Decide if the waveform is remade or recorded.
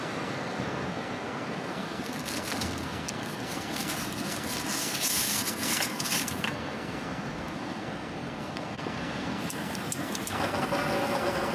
remade